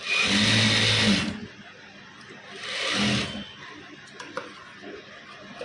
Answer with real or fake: real